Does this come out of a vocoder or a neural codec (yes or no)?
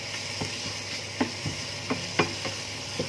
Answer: no